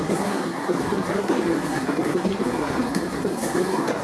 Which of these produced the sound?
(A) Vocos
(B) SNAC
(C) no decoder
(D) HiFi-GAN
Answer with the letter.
B